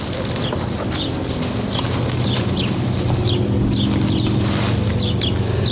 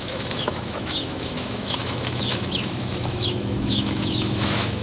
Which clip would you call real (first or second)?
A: first